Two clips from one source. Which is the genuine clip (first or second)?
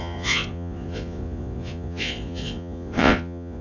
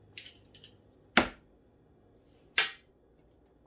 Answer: second